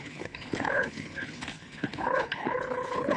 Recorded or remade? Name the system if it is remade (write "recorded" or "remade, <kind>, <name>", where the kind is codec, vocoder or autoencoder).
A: remade, codec, HILCodec